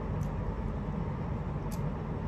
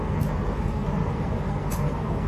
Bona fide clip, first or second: first